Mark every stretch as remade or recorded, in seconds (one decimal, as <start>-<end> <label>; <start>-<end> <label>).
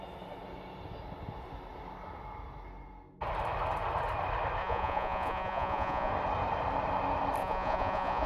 0.0-4.6 recorded; 4.6-6.1 remade; 6.1-7.4 recorded; 7.4-8.3 remade